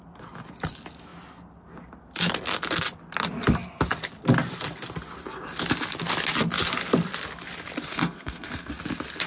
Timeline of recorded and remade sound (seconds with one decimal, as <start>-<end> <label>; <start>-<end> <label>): 0.0-7.9 recorded; 7.9-8.7 remade; 8.7-9.3 recorded